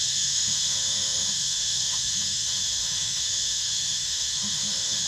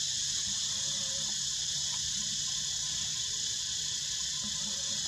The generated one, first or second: first